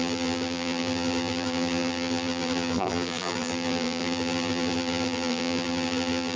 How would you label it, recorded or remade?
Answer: remade